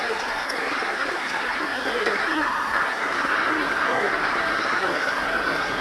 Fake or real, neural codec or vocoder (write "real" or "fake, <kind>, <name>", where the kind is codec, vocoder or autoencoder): fake, codec, SNAC